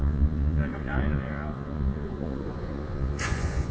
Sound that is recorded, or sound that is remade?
remade